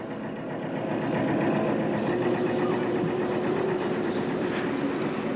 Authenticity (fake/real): real